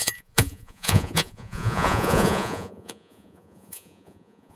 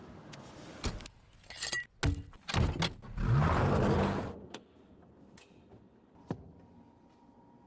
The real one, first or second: second